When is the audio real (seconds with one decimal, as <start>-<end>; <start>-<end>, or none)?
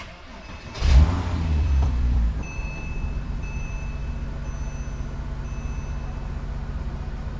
4.0-6.8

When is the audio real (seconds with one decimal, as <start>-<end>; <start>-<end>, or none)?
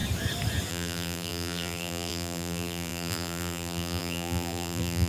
0.0-0.7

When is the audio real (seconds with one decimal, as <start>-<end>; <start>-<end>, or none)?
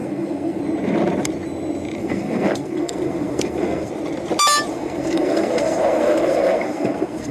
0.6-2.0; 3.9-4.7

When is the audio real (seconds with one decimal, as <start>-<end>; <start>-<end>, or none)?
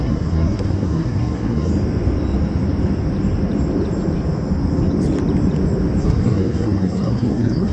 1.7-6.0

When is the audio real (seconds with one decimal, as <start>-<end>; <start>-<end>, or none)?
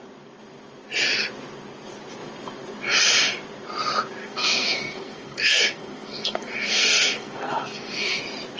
0.0-4.2; 8.2-8.6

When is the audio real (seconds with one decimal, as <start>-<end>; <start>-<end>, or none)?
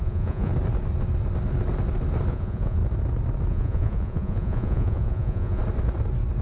0.5-2.3; 2.8-3.5; 5.6-6.4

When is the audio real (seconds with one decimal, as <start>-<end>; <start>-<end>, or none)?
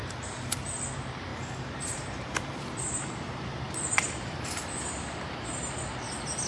0.0-1.3; 4.5-6.5